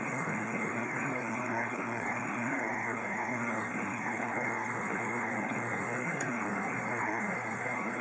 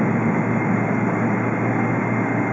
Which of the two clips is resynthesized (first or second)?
first